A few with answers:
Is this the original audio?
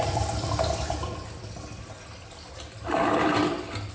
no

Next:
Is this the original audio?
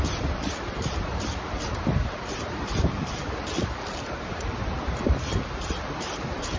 no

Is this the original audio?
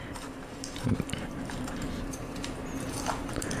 no